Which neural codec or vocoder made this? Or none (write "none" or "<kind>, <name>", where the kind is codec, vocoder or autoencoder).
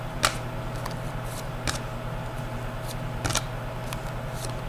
none